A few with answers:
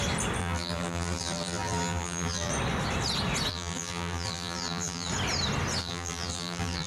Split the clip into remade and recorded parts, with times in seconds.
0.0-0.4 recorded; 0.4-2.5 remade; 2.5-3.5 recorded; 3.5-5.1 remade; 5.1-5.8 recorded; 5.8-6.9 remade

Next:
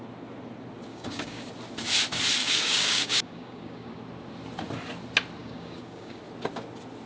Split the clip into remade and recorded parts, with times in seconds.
0.0-0.9 recorded; 0.9-1.5 remade; 1.5-2.4 recorded; 2.4-4.0 remade; 4.0-5.4 recorded; 5.4-6.2 remade; 6.2-7.1 recorded